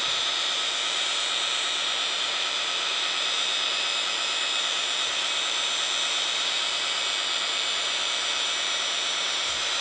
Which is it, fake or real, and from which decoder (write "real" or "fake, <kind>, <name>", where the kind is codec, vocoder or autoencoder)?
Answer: fake, vocoder, BigVGAN v2